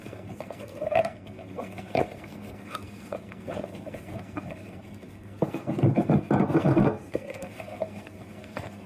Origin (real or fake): fake